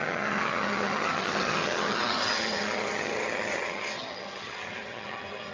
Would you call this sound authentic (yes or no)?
no